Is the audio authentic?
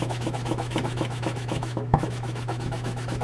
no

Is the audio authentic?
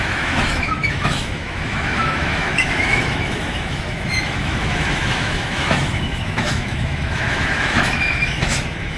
no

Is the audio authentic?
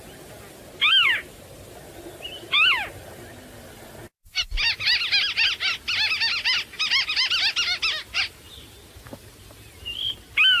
yes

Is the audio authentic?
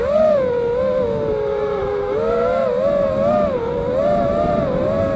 yes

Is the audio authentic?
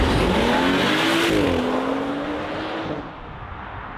yes